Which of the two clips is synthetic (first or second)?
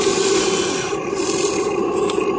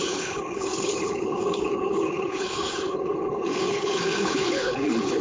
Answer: second